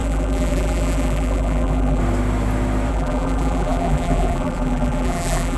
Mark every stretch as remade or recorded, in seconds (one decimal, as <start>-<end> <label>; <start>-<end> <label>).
0.0-2.0 remade; 2.0-2.9 recorded; 2.9-5.6 remade